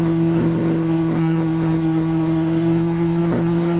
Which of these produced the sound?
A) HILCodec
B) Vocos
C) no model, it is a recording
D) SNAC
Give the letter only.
D